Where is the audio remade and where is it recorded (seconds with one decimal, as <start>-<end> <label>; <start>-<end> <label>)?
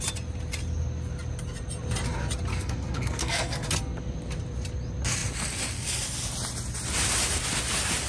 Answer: 0.0-2.5 recorded; 2.5-3.7 remade; 3.7-8.1 recorded